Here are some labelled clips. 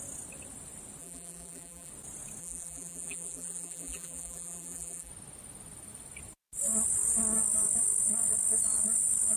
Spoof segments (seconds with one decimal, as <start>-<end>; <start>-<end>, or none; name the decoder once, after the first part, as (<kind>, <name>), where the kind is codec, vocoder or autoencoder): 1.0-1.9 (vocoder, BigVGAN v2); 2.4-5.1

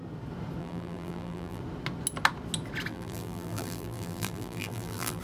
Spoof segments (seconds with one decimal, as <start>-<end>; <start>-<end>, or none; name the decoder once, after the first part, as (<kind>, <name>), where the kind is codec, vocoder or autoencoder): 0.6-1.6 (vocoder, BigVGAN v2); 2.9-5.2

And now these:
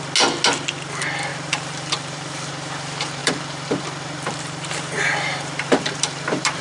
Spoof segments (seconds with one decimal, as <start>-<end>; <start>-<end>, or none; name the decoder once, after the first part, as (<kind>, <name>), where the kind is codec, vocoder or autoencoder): 1.3-2.5 (vocoder, BigVGAN v2); 3.2-6.6

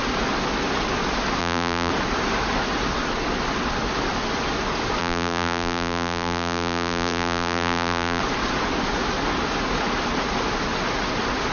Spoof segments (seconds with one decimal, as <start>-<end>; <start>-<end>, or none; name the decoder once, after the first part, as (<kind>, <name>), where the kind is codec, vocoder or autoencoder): 1.4-1.9 (vocoder, BigVGAN v2); 5.0-8.2